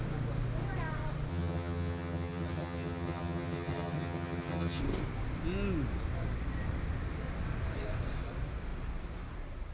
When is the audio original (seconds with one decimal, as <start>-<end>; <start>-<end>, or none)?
0.0-1.3; 4.8-9.7